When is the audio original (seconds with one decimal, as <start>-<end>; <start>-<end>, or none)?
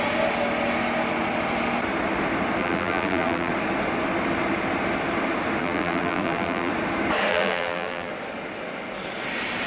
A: 0.0-2.6; 3.5-5.6; 6.7-7.3; 8.1-9.7